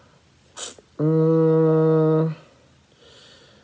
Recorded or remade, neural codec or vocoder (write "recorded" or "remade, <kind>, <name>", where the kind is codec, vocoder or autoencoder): recorded